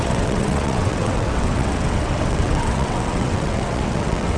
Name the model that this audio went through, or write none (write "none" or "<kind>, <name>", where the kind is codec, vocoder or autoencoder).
vocoder, WaveNeXt